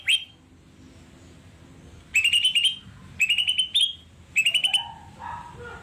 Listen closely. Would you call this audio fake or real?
real